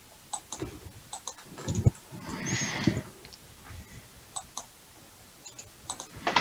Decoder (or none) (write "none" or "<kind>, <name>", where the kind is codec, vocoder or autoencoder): none